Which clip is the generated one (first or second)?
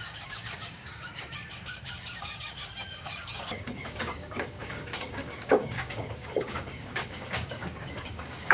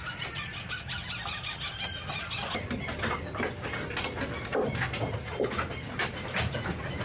first